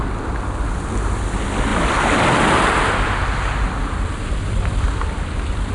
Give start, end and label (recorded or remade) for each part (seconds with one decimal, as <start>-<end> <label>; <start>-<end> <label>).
0.0-1.7 recorded; 1.7-2.3 remade; 2.3-3.8 recorded; 3.8-4.6 remade; 4.6-5.7 recorded